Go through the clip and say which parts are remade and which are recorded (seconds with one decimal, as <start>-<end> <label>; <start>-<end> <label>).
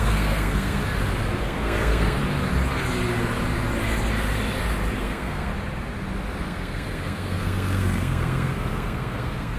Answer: 0.0-0.8 remade; 0.8-1.4 recorded; 1.4-2.2 remade; 2.2-5.0 recorded; 5.0-5.5 remade; 5.5-6.4 recorded; 6.4-9.6 remade